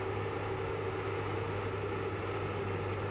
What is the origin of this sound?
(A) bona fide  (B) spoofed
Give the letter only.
A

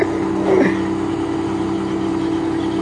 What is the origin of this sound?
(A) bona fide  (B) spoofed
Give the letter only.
A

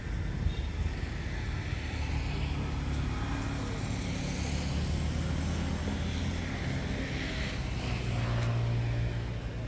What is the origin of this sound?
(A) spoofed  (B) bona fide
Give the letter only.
B